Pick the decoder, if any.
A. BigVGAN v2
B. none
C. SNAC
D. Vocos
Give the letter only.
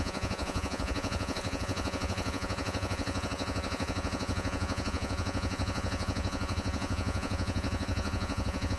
D